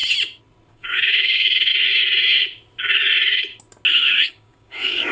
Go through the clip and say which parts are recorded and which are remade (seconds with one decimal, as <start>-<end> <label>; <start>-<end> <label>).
0.0-0.7 recorded; 0.7-1.7 remade; 1.7-3.9 recorded; 3.9-5.1 remade